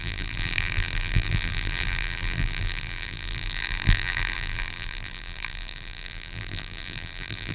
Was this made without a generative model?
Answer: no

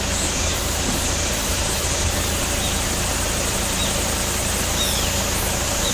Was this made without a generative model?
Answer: no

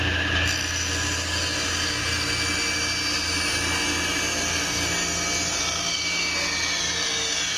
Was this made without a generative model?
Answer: yes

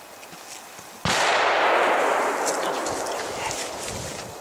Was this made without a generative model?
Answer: yes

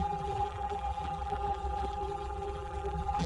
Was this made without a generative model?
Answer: no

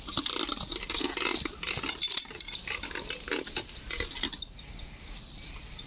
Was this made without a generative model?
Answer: yes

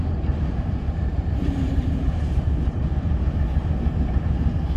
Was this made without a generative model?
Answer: no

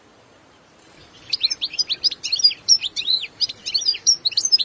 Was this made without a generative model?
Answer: no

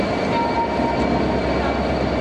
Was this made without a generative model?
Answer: yes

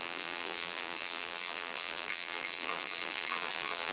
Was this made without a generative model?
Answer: no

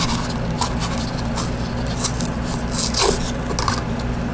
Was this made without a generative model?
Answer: yes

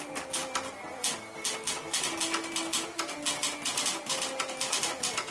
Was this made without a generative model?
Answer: yes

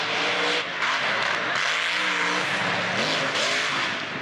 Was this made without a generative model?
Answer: yes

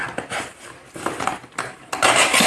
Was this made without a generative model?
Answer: yes